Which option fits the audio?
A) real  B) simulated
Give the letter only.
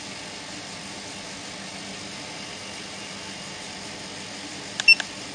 A